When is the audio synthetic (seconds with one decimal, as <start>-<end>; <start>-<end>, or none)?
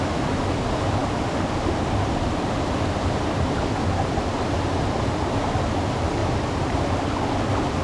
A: 6.2-7.0